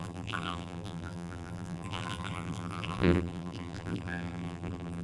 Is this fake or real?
fake